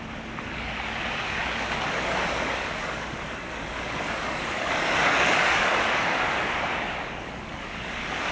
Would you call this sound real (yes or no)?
no